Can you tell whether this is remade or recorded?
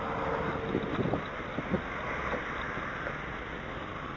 recorded